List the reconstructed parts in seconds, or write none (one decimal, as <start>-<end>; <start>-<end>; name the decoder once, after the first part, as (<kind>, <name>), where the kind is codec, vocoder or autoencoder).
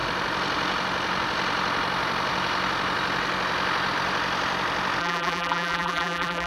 5.0-6.5 (vocoder, BigVGAN v2)